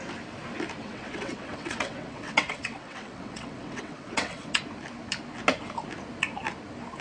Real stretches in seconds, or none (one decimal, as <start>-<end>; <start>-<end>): 0.0-0.8; 4.6-7.0